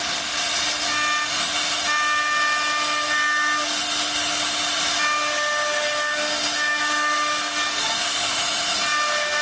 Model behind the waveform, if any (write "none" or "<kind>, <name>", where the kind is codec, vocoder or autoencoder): none